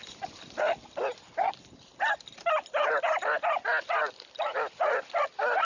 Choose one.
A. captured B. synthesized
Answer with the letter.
A